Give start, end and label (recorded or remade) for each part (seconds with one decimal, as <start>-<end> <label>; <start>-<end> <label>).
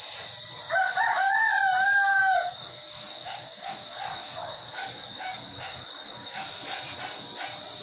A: 0.0-0.8 recorded; 0.8-1.5 remade; 1.5-2.1 recorded; 2.1-6.8 remade; 6.8-7.8 recorded